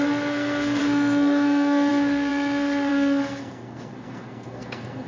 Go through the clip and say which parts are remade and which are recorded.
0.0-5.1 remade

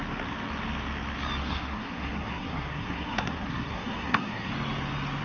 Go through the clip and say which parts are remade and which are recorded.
0.0-1.4 recorded; 1.4-4.5 remade; 4.5-5.2 recorded

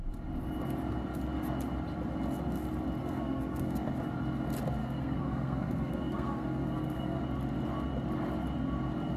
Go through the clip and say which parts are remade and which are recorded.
0.0-3.0 recorded; 3.0-3.9 remade; 3.9-4.8 recorded; 4.8-7.2 remade; 7.2-9.2 recorded